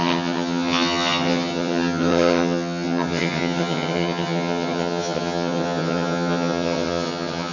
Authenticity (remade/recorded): remade